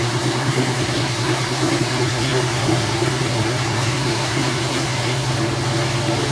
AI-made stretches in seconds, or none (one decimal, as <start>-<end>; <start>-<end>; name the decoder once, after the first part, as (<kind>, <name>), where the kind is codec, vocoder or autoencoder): 0.0-5.3 (codec, SNAC)